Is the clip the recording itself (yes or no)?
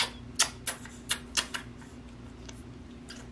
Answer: yes